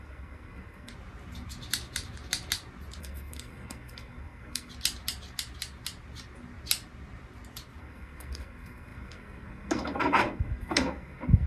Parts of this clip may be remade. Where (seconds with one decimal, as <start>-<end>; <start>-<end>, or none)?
0.0-0.9; 3.0-4.7; 7.8-11.5